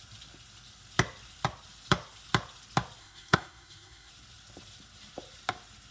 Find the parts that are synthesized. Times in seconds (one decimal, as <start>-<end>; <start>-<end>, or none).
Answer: 3.0-4.1